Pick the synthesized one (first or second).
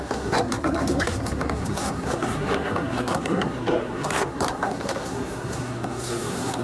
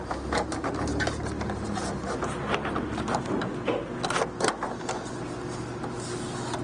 first